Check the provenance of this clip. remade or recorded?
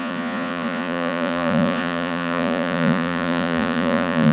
remade